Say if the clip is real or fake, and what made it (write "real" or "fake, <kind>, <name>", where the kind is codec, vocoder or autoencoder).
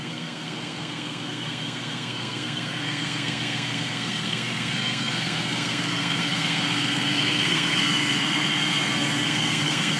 fake, codec, SNAC